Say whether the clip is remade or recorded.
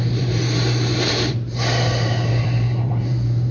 remade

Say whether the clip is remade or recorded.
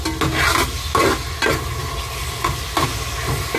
recorded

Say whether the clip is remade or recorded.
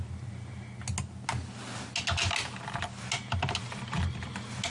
recorded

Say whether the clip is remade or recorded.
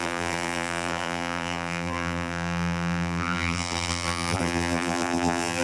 remade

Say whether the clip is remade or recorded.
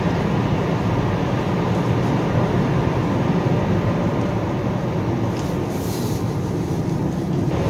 recorded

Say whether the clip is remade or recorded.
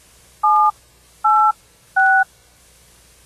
recorded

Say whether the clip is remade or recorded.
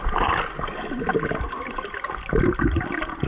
recorded